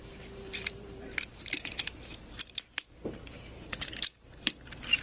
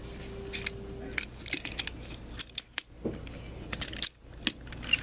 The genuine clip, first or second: second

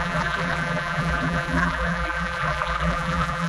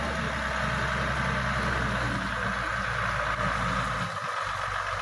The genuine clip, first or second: second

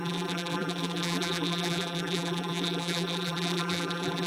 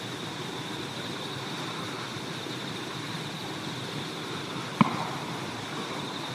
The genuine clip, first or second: second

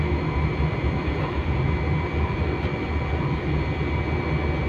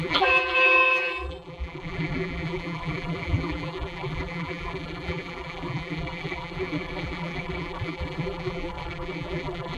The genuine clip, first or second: first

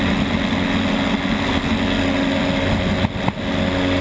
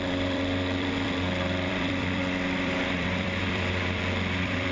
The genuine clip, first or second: first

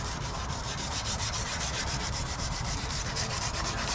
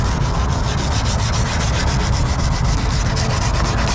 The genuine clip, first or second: second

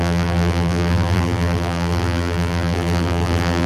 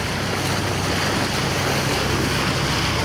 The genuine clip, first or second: second